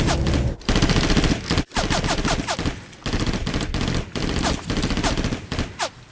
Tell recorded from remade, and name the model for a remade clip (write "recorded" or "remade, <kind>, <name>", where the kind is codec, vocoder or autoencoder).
recorded